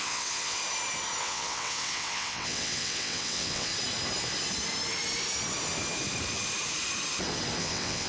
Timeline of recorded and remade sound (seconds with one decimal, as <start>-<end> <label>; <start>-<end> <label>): 0.0-0.6 remade; 0.6-1.2 recorded; 1.2-3.7 remade; 3.7-7.6 recorded; 7.6-8.1 remade